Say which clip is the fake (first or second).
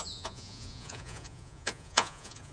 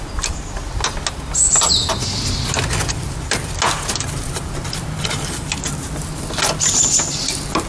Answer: first